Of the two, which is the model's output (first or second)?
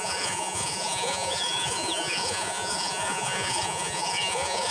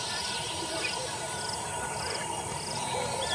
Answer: first